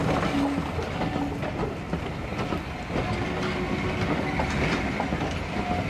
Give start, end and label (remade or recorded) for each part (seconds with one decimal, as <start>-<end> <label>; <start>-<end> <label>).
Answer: 0.0-5.9 recorded